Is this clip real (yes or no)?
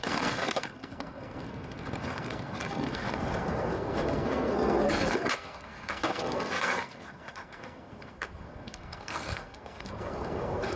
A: no